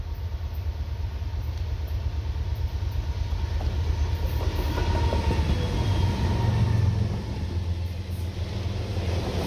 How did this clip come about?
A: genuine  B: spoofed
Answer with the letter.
A